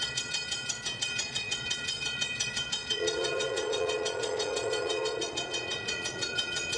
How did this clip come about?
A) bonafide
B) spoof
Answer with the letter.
B